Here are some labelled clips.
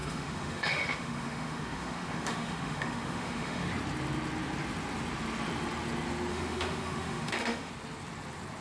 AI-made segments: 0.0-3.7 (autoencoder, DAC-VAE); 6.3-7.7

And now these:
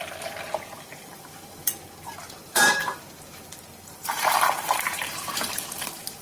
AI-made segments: 1.0-1.7 (vocoder, BigVGAN v2); 2.4-5.6

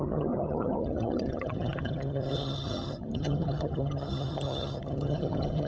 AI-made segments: 0.0-5.7 (vocoder, HiFi-GAN)

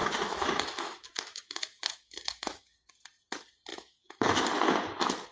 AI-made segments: 0.0-2.9 (autoencoder, DAC-VAE); 3.7-4.4

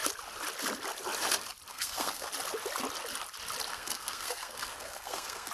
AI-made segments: 1.7-2.3 (codec, SNAC); 3.7-5.5

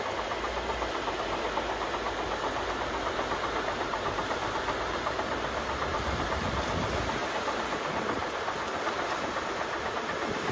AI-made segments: 3.9-6.4 (vocoder, BigVGAN v2); 7.2-9.9

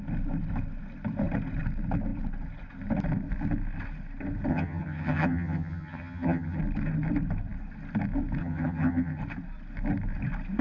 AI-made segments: 4.5-6.6 (vocoder, HiFi-GAN); 8.4-9.2